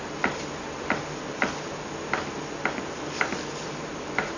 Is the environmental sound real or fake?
real